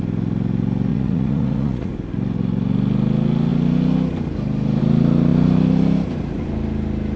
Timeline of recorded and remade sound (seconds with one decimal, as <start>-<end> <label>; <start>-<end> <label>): 0.0-0.9 recorded; 0.9-1.9 remade; 1.9-7.2 recorded